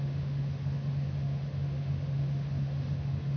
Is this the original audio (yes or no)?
no